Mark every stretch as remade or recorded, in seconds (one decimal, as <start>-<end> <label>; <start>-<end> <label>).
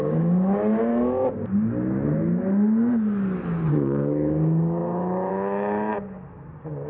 0.0-0.9 remade; 0.9-3.7 recorded; 3.7-5.9 remade; 5.9-6.9 recorded